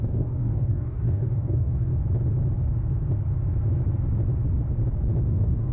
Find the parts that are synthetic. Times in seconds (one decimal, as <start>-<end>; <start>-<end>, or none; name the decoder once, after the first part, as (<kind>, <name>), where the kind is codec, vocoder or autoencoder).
0.0-1.9 (codec, DAC); 5.3-5.7